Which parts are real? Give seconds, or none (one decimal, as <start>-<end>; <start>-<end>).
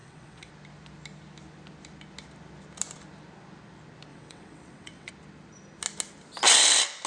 0.5-4.1; 5.1-7.1